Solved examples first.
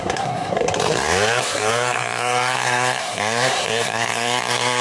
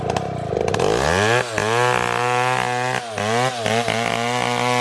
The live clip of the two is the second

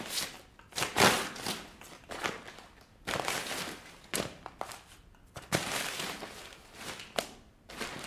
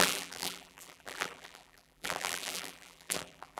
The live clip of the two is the first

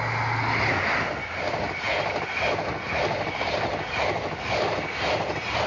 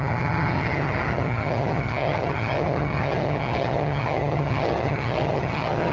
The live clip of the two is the first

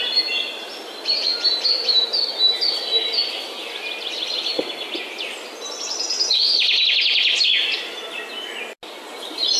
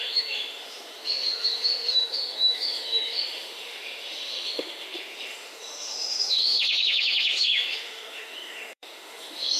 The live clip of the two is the first